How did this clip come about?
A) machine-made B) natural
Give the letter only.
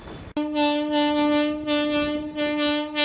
B